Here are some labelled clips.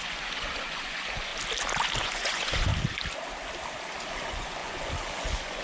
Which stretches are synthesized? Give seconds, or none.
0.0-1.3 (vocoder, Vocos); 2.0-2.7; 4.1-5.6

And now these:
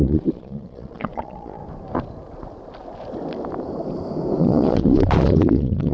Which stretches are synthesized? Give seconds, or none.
0.0-1.6 (vocoder, Vocos); 4.4-5.9

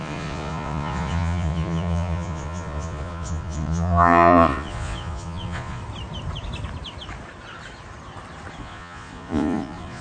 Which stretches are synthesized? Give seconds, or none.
0.0-5.8 (vocoder, Vocos); 8.6-10.0

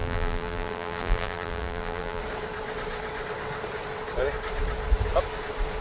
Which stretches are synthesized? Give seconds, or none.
0.0-2.2 (vocoder, BigVGAN v2)